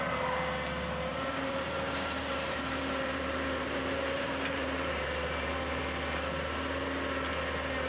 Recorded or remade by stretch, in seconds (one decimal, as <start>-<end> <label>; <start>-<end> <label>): 0.0-1.1 recorded; 1.1-5.8 remade; 5.8-7.9 recorded